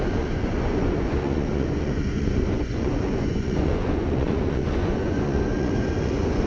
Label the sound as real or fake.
fake